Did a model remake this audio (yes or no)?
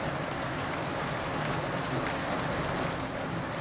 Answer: no